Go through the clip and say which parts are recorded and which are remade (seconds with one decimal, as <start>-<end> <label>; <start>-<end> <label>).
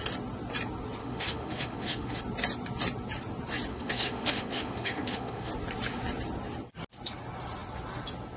0.0-1.0 recorded; 1.0-2.2 remade; 2.2-3.7 recorded; 3.7-5.5 remade; 5.5-8.4 recorded